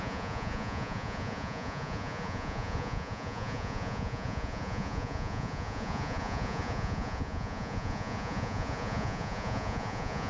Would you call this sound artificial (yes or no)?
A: yes